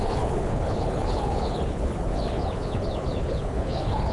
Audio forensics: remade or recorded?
remade